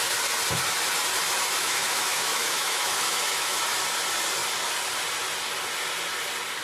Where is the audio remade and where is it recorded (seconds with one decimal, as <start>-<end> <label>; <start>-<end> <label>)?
0.0-1.6 recorded; 1.6-3.6 remade; 3.6-6.6 recorded